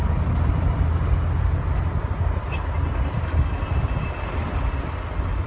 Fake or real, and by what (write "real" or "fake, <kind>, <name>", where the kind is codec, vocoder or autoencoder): real